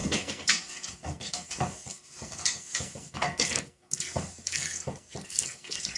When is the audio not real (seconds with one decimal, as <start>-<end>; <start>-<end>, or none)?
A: 0.0-6.0